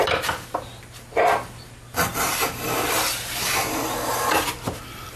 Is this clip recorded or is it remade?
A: remade